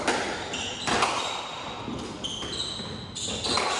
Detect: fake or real real